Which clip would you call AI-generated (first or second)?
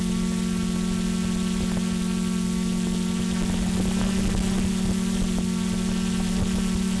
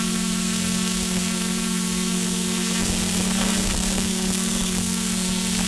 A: second